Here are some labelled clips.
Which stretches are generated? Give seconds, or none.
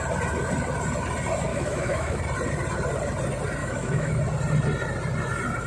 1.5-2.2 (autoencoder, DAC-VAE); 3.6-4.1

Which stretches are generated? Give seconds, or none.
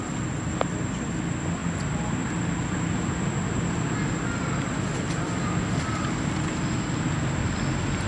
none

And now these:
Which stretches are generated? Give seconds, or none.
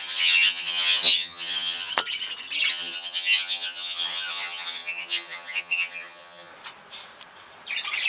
0.0-1.9 (vocoder, HiFi-GAN); 2.7-6.5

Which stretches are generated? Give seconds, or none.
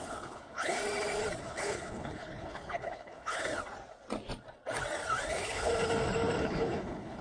0.0-0.8 (codec, HILCodec); 1.4-3.5; 5.3-5.7; 6.4-7.2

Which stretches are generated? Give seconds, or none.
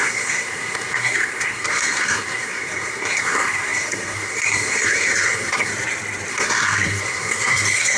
0.0-5.7 (codec, SNAC); 6.3-8.0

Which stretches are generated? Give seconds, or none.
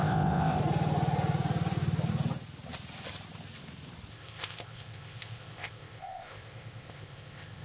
0.0-0.6 (codec, ZipCodec); 4.1-7.6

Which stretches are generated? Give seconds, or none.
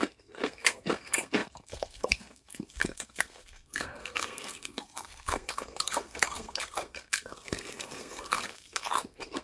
0.0-9.4 (codec, SNAC)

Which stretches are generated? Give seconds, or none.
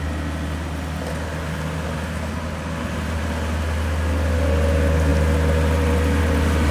none